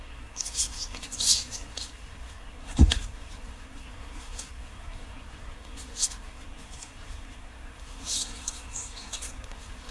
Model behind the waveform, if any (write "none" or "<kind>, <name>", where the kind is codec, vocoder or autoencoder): codec, SNAC